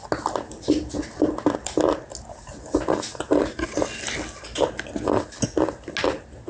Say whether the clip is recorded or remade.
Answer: recorded